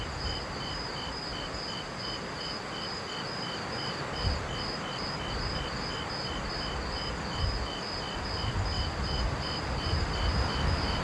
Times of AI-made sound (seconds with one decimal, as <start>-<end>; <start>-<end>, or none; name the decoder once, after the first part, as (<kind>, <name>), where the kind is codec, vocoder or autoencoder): none